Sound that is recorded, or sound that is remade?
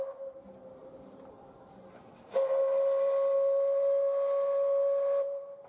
recorded